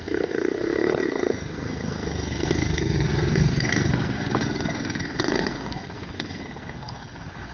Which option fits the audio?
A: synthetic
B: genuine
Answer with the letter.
A